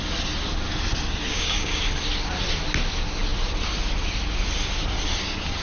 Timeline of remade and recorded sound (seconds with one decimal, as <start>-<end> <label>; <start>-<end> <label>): 0.0-1.3 recorded; 1.3-1.8 remade; 1.8-5.6 recorded